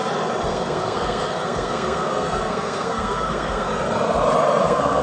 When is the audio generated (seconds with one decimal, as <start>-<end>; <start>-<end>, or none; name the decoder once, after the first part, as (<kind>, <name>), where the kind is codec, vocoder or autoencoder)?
0.5-3.7 (codec, SNAC); 4.6-5.0